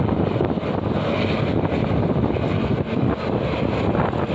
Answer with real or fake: real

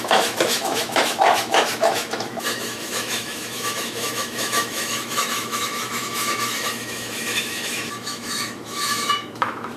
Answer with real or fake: fake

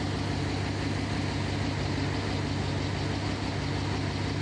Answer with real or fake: real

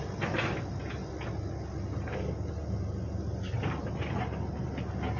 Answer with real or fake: real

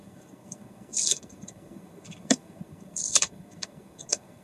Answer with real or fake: fake